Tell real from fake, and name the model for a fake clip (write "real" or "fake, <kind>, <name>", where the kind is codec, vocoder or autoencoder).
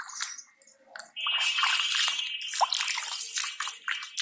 real